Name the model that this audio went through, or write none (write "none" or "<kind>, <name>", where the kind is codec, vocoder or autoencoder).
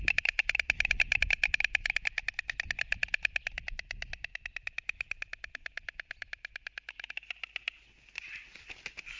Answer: none